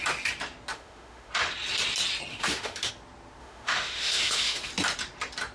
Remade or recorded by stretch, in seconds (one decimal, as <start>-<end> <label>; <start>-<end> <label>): 0.0-0.7 recorded; 0.7-1.3 remade; 1.3-2.3 recorded; 2.3-2.9 remade; 2.9-3.4 recorded; 3.4-4.7 remade; 4.7-5.5 recorded